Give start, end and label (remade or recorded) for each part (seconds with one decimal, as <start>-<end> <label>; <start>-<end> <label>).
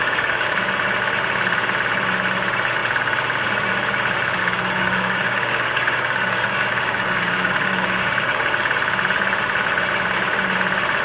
0.0-0.6 remade; 0.6-4.4 recorded; 4.4-8.5 remade; 8.5-11.0 recorded